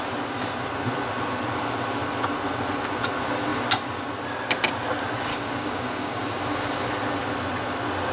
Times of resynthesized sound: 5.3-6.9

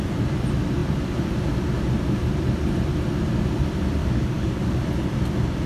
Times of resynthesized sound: 4.0-4.8